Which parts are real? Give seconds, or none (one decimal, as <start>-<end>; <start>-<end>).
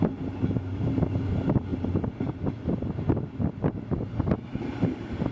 0.0-1.7; 2.5-5.3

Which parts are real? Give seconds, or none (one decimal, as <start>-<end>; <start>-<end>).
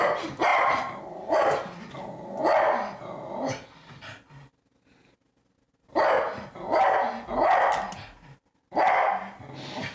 0.0-0.5; 1.0-9.9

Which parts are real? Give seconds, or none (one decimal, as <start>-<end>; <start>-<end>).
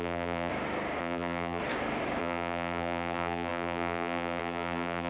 0.5-1.0; 1.6-2.2